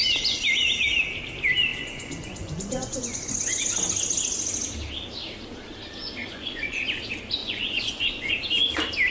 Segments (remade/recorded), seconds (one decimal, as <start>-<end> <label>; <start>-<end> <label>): 0.0-1.7 recorded; 1.7-3.7 remade; 3.7-6.2 recorded; 6.2-6.8 remade; 6.8-7.4 recorded; 7.4-8.3 remade; 8.3-9.1 recorded